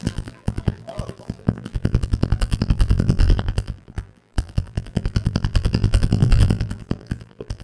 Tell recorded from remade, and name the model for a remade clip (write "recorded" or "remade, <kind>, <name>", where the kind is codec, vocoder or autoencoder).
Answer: remade, vocoder, BigVGAN v2